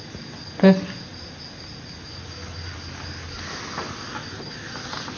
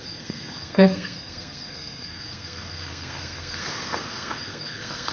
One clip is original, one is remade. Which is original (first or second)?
first